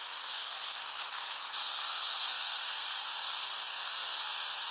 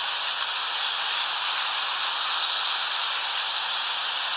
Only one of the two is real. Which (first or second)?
second